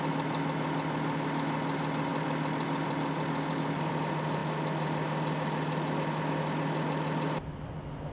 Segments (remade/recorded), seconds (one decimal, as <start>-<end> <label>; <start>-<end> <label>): 0.0-2.1 recorded; 2.1-3.9 remade; 3.9-8.1 recorded